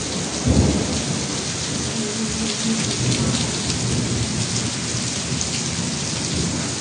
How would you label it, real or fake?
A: real